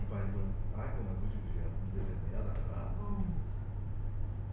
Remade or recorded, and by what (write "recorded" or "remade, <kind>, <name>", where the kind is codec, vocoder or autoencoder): recorded